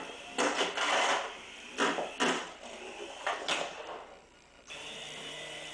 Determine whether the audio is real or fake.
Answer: real